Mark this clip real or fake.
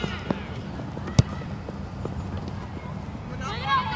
real